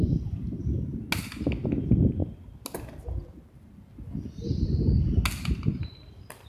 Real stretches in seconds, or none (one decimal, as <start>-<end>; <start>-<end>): 0.0-6.5